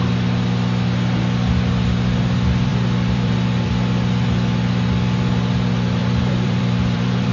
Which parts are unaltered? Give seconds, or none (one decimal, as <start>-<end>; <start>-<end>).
0.0-2.7; 3.7-6.0